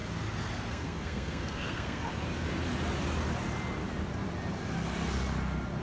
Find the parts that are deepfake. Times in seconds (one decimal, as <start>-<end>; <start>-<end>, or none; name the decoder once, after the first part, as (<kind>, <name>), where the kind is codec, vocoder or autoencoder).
0.7-2.1 (codec, SNAC)